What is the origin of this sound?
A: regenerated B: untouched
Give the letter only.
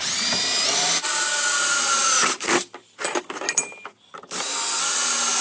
B